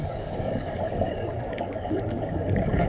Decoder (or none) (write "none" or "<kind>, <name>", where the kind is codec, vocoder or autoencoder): codec, DAC